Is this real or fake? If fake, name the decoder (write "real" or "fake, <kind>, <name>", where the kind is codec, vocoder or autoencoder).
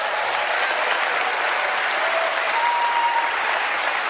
real